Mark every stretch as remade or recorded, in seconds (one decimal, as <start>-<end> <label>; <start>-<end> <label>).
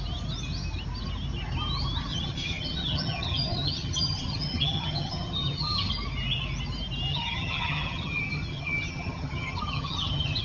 0.0-2.1 recorded; 2.1-5.9 remade; 5.9-7.1 recorded; 7.1-10.4 remade